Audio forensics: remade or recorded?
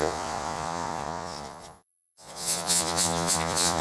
remade